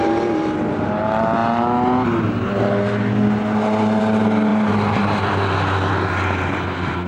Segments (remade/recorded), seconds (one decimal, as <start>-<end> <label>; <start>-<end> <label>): 0.0-7.1 recorded